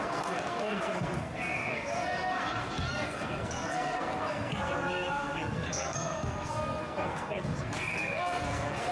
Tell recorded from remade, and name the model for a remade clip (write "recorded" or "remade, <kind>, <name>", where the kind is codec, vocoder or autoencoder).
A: remade, codec, SNAC